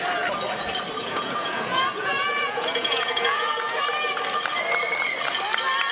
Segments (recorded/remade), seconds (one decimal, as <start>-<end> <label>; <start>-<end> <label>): 0.0-1.0 recorded; 1.0-3.8 remade; 3.8-5.9 recorded